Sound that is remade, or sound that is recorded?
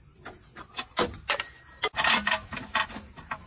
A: recorded